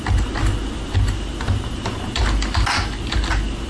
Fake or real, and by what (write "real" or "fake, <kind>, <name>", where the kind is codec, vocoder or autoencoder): real